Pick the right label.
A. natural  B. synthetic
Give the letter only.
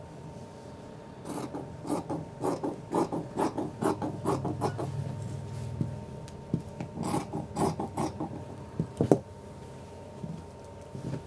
A